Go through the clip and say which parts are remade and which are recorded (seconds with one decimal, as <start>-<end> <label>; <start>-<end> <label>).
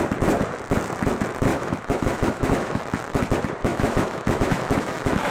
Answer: 0.0-1.5 recorded; 1.5-2.8 remade; 2.8-3.7 recorded; 3.7-5.3 remade